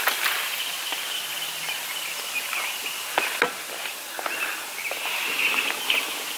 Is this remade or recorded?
recorded